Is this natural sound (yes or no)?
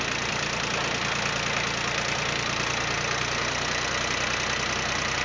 yes